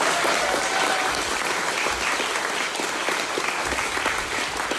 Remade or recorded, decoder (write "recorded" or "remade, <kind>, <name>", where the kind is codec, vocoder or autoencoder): recorded